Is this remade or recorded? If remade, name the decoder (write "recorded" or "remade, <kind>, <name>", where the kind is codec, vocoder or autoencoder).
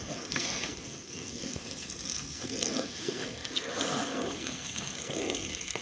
remade, codec, SNAC